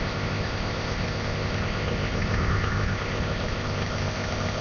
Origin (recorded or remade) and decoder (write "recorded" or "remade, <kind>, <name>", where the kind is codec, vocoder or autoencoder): remade, codec, ZipCodec